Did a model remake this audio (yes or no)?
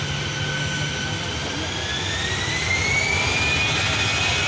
no